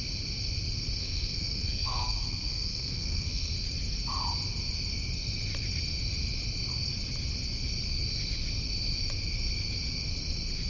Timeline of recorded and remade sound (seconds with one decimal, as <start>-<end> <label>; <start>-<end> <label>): 0.0-1.0 recorded; 1.0-3.5 remade; 3.5-10.7 recorded